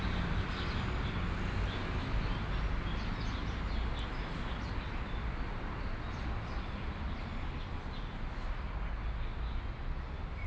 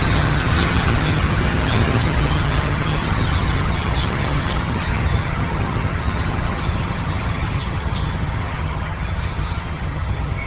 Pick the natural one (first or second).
first